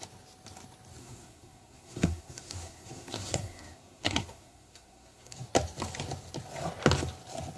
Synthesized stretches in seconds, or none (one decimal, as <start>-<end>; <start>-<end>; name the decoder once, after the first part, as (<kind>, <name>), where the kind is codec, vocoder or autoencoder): 1.0-5.5 (codec, SNAC)